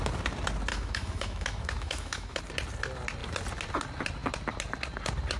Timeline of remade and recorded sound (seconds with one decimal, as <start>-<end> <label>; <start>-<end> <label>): 0.0-0.7 recorded; 0.7-2.4 remade; 2.4-5.4 recorded